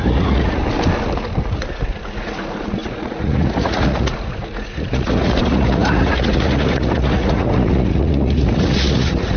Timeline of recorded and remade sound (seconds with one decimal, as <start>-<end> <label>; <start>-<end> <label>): 0.0-0.6 remade; 0.6-1.4 recorded; 1.4-9.4 remade